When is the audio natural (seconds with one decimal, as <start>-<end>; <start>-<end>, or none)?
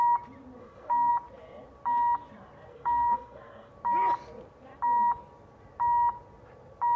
0.0-0.6; 1.1-2.7; 3.7-7.0